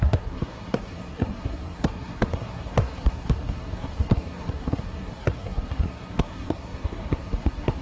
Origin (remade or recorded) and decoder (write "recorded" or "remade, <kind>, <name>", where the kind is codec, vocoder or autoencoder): remade, codec, SNAC